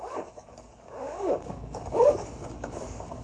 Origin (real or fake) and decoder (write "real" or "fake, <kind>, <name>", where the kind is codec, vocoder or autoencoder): fake, codec, DAC